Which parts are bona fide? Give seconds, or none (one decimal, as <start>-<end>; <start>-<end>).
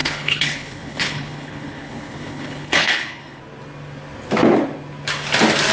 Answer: 3.4-5.7